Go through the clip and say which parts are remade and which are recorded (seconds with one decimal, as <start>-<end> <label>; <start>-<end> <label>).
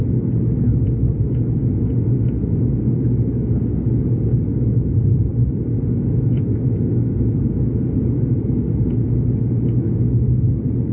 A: 0.0-10.9 recorded